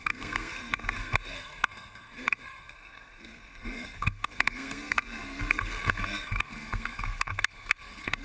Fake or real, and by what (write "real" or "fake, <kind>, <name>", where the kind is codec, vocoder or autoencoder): fake, codec, SNAC